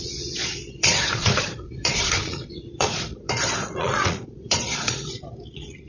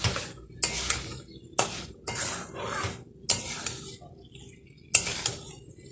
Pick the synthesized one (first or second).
first